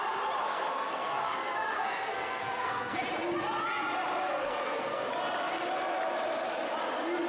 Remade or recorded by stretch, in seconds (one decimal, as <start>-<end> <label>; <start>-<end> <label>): 0.0-0.4 recorded; 0.4-3.0 remade; 3.0-4.4 recorded; 4.4-5.1 remade; 5.1-7.3 recorded